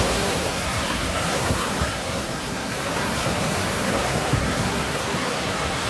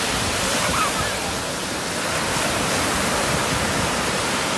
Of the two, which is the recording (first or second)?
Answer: second